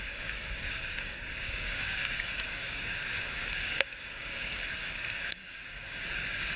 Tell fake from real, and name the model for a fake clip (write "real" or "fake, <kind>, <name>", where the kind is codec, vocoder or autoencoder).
fake, codec, DAC